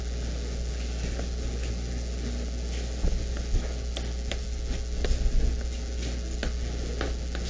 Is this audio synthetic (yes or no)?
no